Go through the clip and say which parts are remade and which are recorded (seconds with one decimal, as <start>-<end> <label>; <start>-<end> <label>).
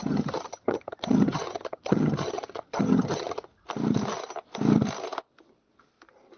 0.0-3.5 remade; 3.5-6.4 recorded